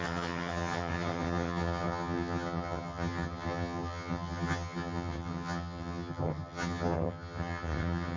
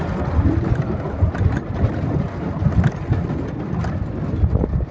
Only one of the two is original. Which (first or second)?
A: second